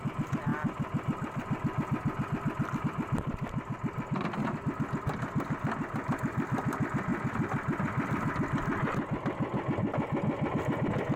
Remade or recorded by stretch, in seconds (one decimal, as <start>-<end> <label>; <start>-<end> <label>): 0.0-11.2 recorded